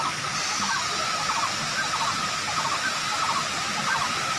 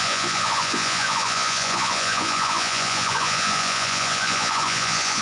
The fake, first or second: second